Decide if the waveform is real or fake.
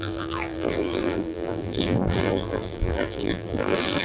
fake